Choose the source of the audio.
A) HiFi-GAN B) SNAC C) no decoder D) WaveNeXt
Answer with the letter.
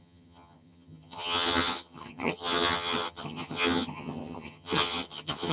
A